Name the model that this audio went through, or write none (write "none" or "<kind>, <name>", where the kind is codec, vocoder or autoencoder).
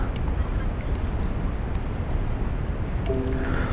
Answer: none